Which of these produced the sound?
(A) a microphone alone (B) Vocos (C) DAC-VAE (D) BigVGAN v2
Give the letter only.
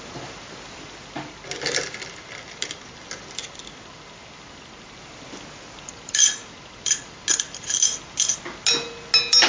A